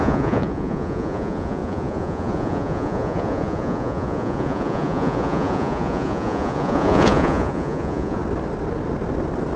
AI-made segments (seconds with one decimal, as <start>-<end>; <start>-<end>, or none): 0.0-8.2